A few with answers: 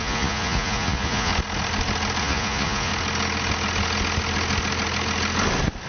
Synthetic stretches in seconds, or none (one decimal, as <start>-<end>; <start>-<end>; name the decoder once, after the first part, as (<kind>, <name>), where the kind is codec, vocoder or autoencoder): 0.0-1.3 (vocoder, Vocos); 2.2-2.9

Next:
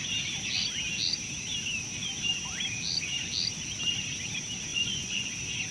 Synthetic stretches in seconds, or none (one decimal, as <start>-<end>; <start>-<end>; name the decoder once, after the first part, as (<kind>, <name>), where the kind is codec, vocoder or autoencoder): 4.7-5.3 (vocoder, Vocos)

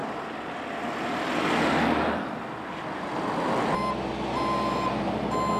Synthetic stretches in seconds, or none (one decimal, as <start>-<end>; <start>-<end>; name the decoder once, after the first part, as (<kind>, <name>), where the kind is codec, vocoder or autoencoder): none

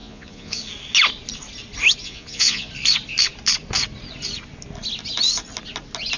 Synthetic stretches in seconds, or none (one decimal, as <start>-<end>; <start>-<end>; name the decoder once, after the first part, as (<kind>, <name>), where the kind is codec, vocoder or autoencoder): 0.0-0.6 (vocoder, Vocos); 2.0-2.7

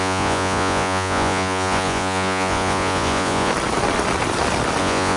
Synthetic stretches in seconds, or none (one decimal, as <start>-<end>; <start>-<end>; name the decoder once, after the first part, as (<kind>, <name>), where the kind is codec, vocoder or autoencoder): 0.0-3.5 (vocoder, Vocos); 4.8-5.2

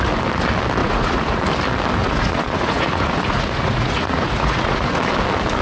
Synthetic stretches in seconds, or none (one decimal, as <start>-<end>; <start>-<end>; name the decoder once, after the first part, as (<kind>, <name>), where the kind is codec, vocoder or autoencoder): 0.8-1.4 (vocoder, Vocos); 2.0-5.0

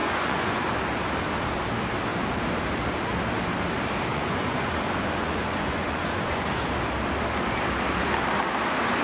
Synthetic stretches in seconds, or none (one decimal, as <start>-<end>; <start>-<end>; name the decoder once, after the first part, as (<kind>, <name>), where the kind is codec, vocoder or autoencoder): 0.0-0.6 (vocoder, Vocos); 4.1-6.6

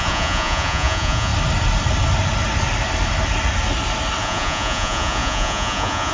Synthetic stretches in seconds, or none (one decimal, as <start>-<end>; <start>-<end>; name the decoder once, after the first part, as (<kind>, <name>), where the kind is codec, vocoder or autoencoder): 0.0-1.3 (vocoder, Vocos); 4.2-6.1